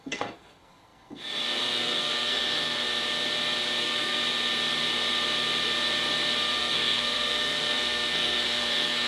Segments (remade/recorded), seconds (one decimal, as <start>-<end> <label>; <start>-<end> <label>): 0.0-2.9 remade; 2.9-3.8 recorded; 3.8-4.2 remade; 4.2-6.6 recorded; 6.6-9.1 remade